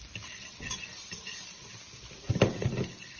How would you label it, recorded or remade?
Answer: recorded